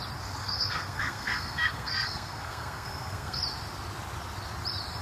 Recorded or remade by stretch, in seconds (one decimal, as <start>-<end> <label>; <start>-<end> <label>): 0.0-0.4 recorded; 0.4-3.4 remade; 3.4-5.0 recorded